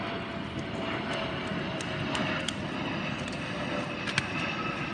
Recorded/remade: recorded